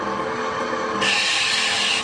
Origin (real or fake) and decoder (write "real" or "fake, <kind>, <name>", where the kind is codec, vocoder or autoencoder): real